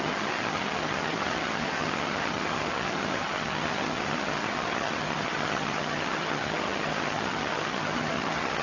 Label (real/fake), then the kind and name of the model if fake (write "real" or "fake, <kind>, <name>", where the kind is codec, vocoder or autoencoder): fake, vocoder, HiFi-GAN